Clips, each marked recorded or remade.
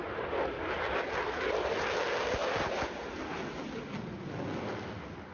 recorded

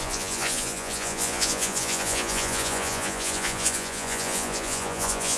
remade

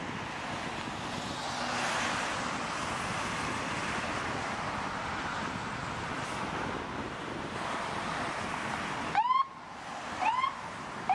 recorded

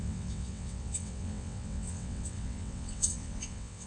remade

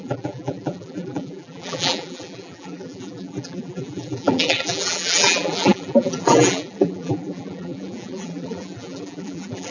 remade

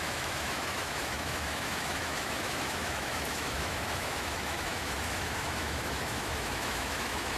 remade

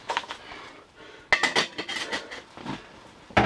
recorded